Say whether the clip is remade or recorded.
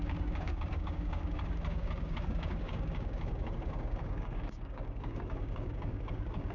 remade